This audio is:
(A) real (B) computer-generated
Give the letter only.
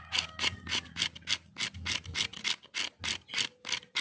A